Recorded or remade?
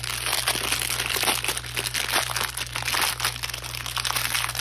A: recorded